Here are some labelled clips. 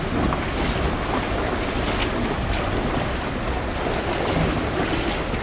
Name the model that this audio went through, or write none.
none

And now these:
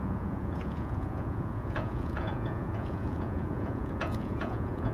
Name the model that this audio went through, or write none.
vocoder, Vocos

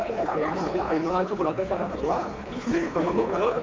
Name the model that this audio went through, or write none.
codec, HILCodec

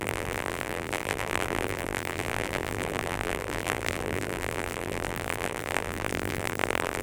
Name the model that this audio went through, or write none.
vocoder, BigVGAN v2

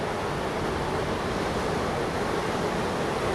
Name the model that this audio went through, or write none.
none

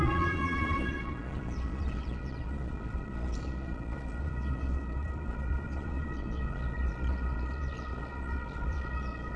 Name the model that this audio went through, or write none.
vocoder, Vocos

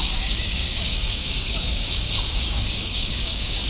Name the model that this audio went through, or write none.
codec, DAC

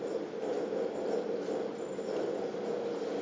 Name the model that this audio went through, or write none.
none